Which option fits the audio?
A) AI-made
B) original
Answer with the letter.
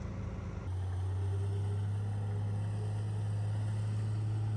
B